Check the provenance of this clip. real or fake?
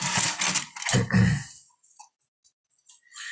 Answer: real